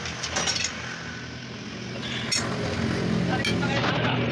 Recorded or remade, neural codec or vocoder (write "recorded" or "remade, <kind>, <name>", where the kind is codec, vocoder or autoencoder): recorded